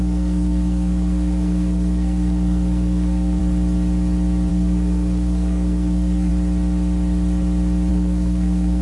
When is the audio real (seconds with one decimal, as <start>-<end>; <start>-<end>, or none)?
3.4-4.5; 6.3-7.9

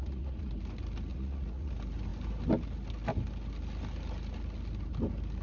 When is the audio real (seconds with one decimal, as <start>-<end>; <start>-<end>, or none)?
0.5-1.1; 1.7-5.4

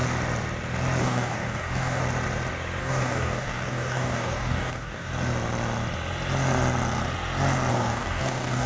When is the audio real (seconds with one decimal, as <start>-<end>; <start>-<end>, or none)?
0.0-1.0; 2.0-2.8; 5.1-7.7

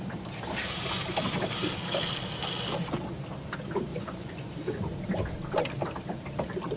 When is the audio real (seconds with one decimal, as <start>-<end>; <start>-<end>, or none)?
0.0-3.9; 4.8-6.8